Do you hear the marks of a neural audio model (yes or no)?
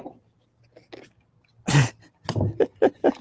no